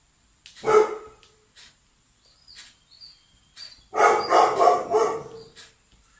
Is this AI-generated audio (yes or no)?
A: no